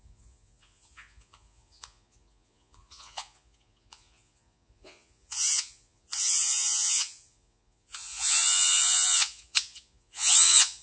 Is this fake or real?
fake